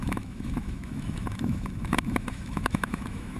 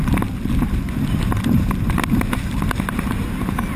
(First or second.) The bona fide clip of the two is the second